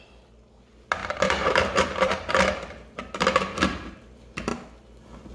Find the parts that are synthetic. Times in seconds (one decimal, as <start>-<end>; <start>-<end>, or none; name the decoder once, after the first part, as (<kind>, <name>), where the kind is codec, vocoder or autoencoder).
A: 1.0-2.3 (vocoder, BigVGAN v2)